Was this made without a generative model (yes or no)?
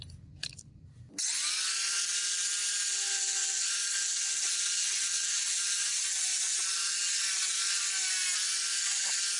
yes